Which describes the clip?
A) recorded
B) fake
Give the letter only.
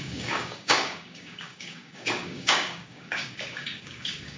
B